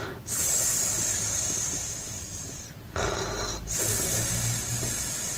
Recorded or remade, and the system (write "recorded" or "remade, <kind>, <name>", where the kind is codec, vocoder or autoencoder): remade, vocoder, BigVGAN v2